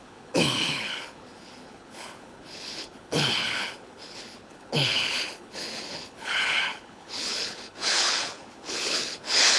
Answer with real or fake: fake